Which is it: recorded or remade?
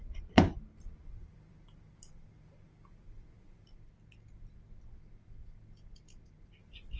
recorded